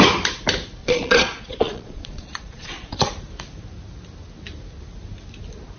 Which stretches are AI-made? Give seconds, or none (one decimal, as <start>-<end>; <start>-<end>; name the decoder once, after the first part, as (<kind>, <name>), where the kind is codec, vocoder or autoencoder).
0.8-3.1 (vocoder, Vocos)